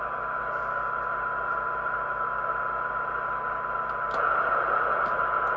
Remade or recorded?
recorded